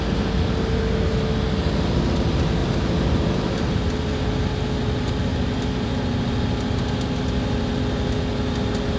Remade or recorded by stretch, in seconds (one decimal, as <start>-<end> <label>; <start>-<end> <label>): 0.0-2.6 recorded; 2.6-4.5 remade; 4.5-9.0 recorded